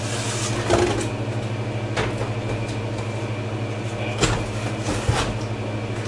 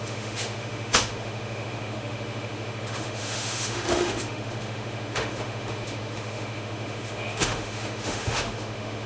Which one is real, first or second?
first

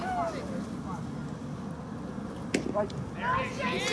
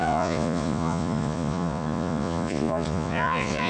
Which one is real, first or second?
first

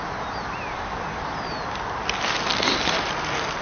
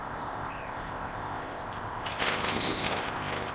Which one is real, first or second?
first